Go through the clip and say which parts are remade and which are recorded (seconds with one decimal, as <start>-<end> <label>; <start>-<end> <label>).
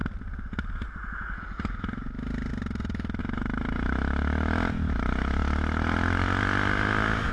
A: 0.0-7.3 recorded